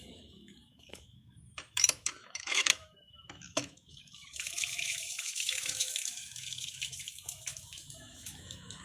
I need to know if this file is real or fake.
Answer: fake